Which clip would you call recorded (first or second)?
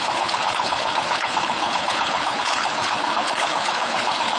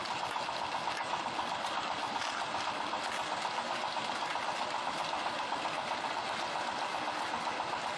second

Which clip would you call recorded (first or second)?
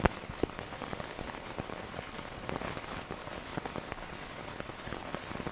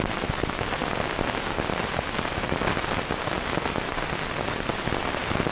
second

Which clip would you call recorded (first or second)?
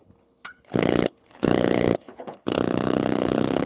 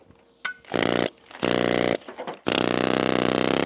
second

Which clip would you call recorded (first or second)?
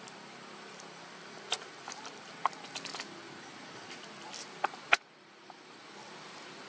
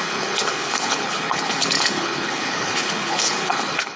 first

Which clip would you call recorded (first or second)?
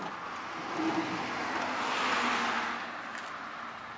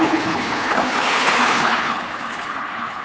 first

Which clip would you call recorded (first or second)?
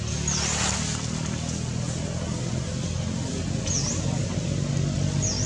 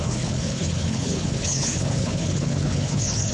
first